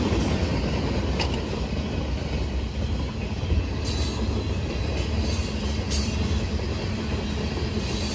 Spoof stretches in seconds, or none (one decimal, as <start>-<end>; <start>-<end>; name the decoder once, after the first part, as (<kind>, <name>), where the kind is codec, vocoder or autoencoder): none

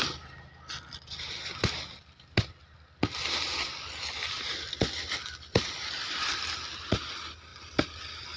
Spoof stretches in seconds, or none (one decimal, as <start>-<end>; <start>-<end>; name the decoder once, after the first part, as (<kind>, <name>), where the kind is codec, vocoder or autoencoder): none